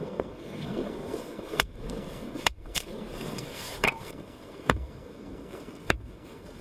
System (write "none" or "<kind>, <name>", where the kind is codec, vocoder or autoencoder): codec, SNAC